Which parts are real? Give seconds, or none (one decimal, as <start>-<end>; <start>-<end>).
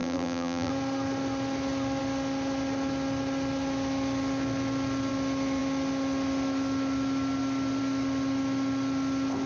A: 0.7-9.5